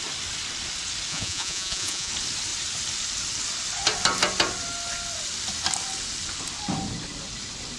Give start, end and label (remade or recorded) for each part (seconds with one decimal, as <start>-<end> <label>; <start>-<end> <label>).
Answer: 0.0-1.1 recorded; 1.1-2.1 remade; 2.1-7.8 recorded